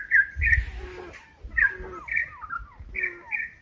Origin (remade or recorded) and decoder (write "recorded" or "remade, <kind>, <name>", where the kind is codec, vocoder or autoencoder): recorded